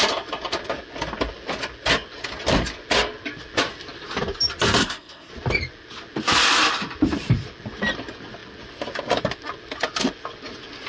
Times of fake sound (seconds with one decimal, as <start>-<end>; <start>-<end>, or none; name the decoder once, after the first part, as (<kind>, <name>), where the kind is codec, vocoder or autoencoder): 4.8-5.3 (codec, SNAC)